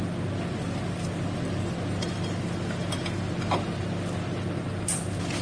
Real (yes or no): yes